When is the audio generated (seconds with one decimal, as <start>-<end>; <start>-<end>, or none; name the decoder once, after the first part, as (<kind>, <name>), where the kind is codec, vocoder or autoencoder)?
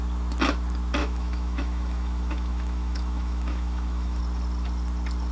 1.0-4.2 (autoencoder, DAC-VAE)